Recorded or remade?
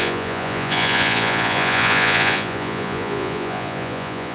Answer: remade